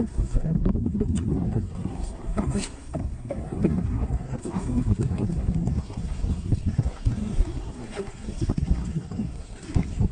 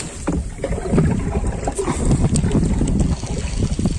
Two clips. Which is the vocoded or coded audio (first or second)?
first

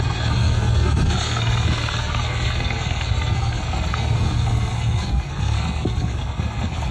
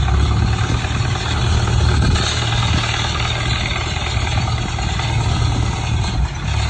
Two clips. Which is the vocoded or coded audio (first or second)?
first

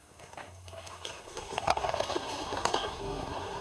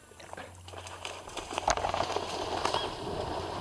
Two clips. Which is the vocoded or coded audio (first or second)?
first